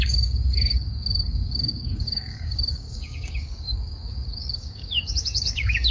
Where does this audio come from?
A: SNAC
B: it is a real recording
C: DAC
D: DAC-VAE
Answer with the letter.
C